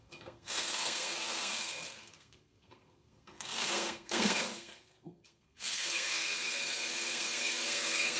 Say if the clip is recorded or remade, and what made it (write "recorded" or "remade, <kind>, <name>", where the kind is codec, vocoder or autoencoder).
remade, codec, SNAC